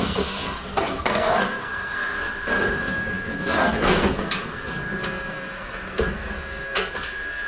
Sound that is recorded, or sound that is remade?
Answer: remade